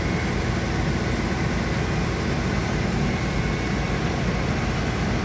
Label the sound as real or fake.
real